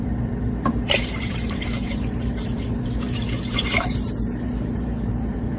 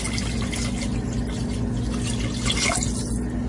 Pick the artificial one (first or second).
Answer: first